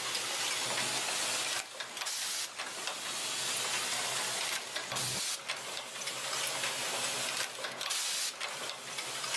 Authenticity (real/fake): real